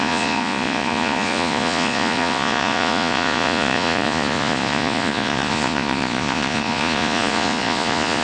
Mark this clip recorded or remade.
remade